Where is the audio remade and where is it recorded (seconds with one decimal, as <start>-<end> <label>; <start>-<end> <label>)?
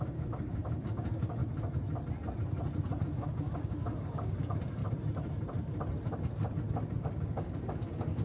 0.0-1.4 remade; 1.4-3.0 recorded; 3.0-4.8 remade; 4.8-7.0 recorded; 7.0-8.2 remade